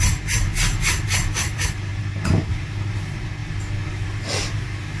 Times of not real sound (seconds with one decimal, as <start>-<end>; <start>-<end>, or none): 0.0-5.0